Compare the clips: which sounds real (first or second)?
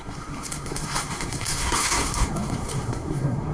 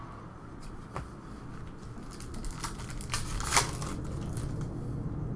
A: second